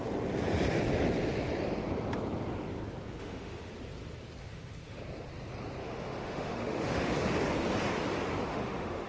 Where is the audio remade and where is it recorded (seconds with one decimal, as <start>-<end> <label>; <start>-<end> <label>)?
0.0-3.2 recorded; 3.2-3.7 remade; 3.7-4.4 recorded; 4.4-5.0 remade; 5.0-5.8 recorded; 5.8-7.1 remade; 7.1-8.5 recorded; 8.5-9.1 remade